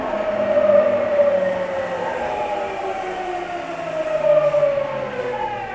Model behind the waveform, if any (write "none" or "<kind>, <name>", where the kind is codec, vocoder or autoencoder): none